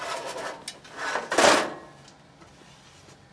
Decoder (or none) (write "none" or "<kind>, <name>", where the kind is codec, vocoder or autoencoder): none